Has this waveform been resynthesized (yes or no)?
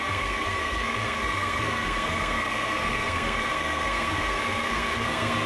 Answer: yes